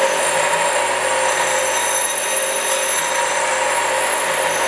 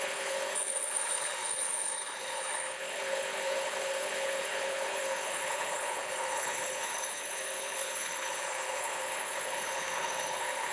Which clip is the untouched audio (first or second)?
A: first